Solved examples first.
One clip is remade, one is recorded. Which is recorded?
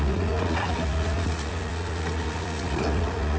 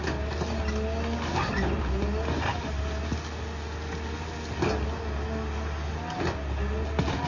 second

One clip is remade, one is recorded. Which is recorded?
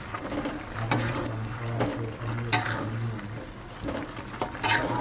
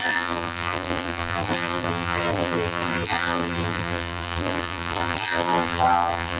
first